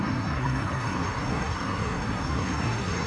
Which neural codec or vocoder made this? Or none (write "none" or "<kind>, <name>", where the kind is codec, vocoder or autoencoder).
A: codec, SNAC